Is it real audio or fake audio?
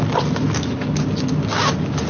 real